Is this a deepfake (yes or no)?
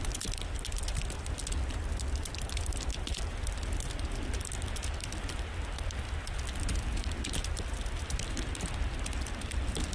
no